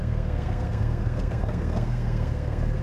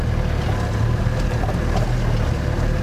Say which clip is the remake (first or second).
first